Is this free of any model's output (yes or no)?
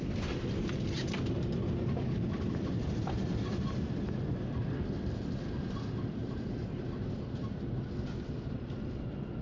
yes